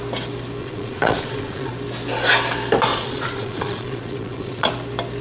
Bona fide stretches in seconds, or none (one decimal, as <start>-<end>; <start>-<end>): 0.0-0.6; 1.7-2.9; 4.7-5.2